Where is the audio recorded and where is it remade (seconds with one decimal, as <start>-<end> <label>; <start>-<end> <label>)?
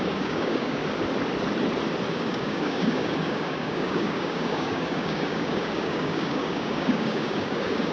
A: 0.0-0.8 remade; 0.8-2.1 recorded; 2.1-7.9 remade